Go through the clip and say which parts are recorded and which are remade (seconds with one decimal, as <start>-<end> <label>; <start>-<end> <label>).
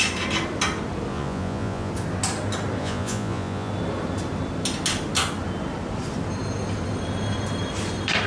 0.0-1.1 recorded; 1.1-1.9 remade; 1.9-2.8 recorded; 2.8-3.7 remade; 3.7-8.3 recorded